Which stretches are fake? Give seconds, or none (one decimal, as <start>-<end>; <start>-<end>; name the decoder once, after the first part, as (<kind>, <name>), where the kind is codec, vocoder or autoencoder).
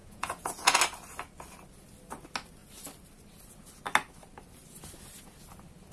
0.0-0.8 (vocoder, Vocos)